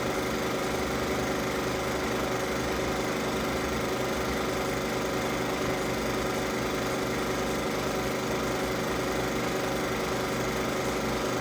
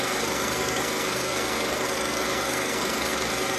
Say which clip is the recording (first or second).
first